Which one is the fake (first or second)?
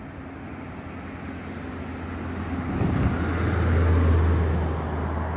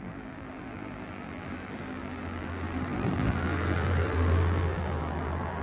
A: second